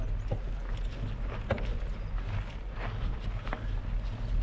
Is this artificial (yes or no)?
no